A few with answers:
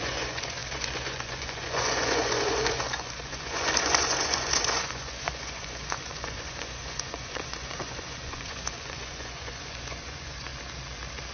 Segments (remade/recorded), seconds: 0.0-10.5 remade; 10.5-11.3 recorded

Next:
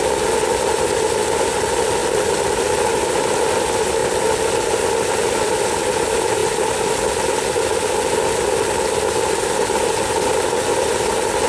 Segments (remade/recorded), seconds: 0.0-11.5 recorded

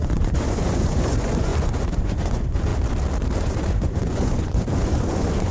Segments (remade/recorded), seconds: 0.0-2.7 remade; 2.7-3.4 recorded; 3.4-5.5 remade